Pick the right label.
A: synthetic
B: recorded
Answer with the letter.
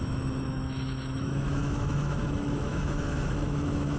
A